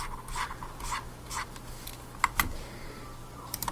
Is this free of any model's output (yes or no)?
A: yes